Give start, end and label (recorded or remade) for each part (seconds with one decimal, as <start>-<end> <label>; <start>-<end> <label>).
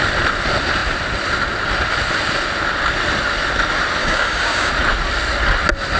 0.0-4.0 recorded; 4.0-4.7 remade; 4.7-6.0 recorded